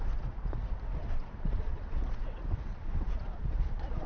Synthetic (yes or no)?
yes